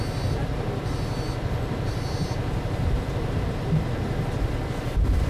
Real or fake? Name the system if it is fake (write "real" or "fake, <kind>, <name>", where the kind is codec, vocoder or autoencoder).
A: real